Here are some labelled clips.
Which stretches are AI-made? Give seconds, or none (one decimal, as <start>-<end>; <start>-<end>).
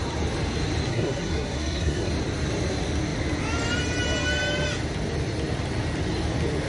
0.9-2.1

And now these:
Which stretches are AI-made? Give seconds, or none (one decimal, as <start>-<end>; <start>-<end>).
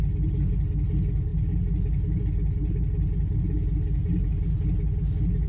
none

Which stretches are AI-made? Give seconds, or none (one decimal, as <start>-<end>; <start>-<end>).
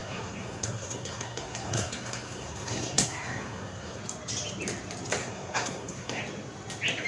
0.0-4.0; 5.2-6.2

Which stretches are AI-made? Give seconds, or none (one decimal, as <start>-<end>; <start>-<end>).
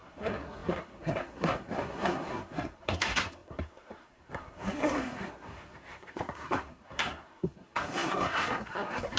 0.0-9.2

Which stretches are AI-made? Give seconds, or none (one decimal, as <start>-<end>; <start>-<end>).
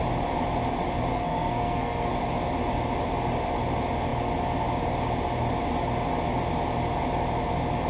1.1-2.1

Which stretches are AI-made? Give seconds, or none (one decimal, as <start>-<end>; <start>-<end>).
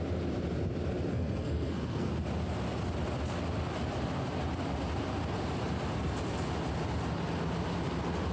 1.1-2.1